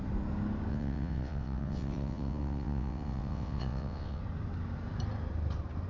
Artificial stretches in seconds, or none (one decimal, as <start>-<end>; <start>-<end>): 0.7-4.2